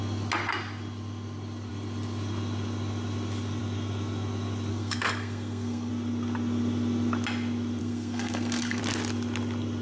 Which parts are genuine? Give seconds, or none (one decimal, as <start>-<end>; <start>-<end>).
0.0-4.7; 5.9-7.8; 8.8-9.8